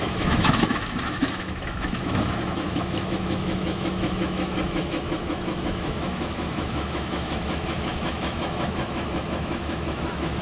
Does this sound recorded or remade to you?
remade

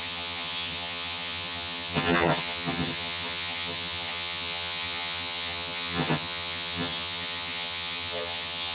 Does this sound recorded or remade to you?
remade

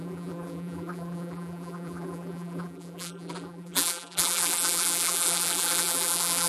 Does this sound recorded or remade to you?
remade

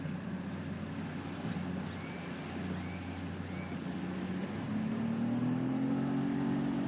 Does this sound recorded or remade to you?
recorded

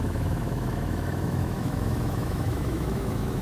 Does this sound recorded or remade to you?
remade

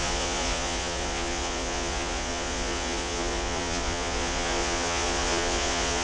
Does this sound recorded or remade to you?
remade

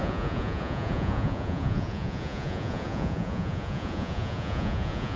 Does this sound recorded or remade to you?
remade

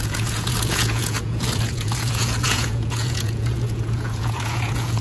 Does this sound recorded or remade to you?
remade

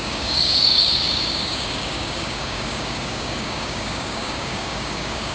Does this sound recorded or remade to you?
remade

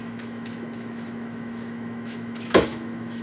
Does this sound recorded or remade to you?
remade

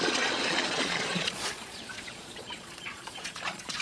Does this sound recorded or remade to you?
remade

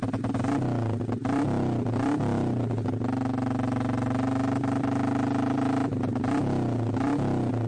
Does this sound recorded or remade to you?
recorded